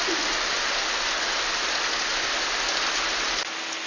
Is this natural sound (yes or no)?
yes